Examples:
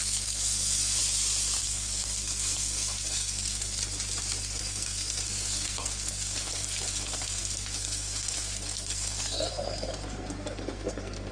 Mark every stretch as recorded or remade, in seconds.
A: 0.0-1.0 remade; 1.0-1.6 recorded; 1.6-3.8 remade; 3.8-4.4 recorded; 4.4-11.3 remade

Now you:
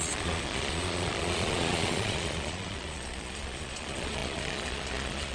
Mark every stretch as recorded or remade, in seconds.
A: 0.0-5.3 remade

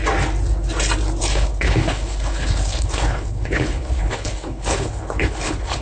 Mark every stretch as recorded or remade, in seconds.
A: 0.0-1.2 recorded; 1.2-5.8 remade

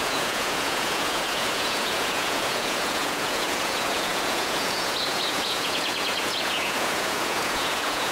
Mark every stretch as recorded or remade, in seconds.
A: 0.0-8.1 remade

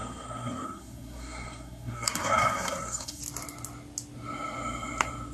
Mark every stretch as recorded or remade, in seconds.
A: 0.0-3.2 remade; 3.2-5.3 recorded

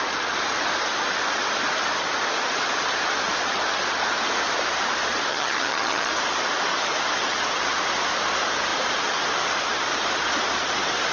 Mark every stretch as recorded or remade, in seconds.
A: 0.0-5.3 recorded; 5.3-6.1 remade; 6.1-11.1 recorded

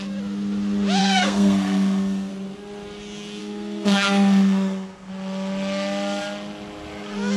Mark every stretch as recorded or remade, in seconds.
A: 0.0-1.0 recorded; 1.0-2.3 remade; 2.3-3.4 recorded; 3.4-5.1 remade; 5.1-7.4 recorded

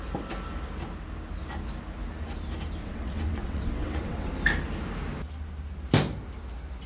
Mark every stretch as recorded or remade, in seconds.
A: 0.0-2.8 recorded; 2.8-4.3 remade; 4.3-6.9 recorded